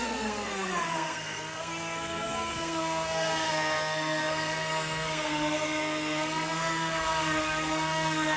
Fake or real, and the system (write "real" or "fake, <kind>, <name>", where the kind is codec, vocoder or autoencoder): fake, codec, SNAC